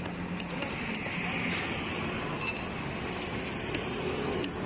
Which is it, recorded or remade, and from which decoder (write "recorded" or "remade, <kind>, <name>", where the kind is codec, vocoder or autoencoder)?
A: recorded